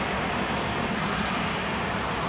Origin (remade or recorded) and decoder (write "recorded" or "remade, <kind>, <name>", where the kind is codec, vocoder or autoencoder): recorded